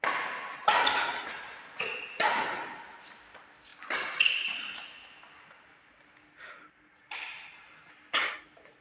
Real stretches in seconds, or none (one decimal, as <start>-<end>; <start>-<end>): 0.0-3.7; 4.6-8.8